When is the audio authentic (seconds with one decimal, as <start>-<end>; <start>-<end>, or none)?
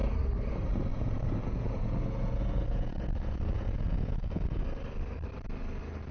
0.0-0.9; 4.6-6.1